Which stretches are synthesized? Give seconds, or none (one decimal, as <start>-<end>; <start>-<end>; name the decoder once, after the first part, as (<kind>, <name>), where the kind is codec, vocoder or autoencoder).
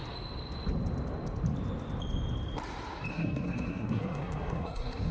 3.1-5.1 (codec, SNAC)